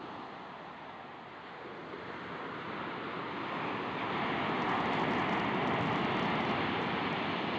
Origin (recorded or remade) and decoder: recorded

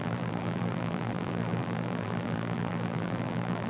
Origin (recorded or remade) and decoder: remade, vocoder, BigVGAN v2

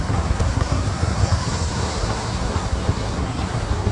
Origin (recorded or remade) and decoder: remade, codec, SNAC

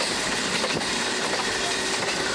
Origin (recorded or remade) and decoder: remade, vocoder, BigVGAN v2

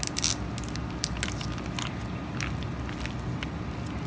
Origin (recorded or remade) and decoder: recorded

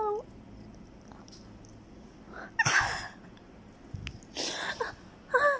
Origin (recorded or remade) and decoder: recorded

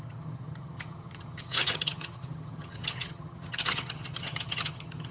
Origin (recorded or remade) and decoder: remade, vocoder, HiFi-GAN